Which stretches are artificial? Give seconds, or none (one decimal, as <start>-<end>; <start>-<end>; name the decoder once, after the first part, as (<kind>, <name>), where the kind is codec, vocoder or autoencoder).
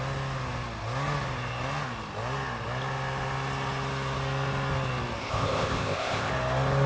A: 5.2-6.3 (codec, ZipCodec)